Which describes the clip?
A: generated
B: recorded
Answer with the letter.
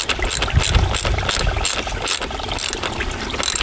B